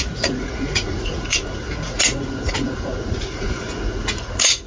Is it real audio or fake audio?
fake